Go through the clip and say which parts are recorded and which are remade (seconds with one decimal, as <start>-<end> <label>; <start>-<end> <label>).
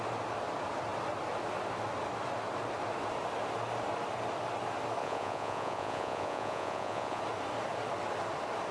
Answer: 0.0-5.0 recorded; 5.0-7.2 remade; 7.2-8.7 recorded